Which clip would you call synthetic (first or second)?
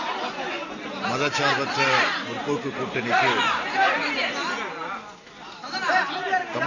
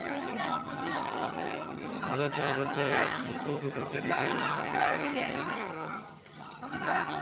second